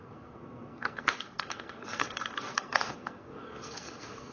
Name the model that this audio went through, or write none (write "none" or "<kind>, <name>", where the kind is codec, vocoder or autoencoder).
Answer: codec, SNAC